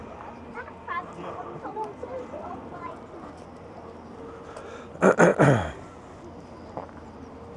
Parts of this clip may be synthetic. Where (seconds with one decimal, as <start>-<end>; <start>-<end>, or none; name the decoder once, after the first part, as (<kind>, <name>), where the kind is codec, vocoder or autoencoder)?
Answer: none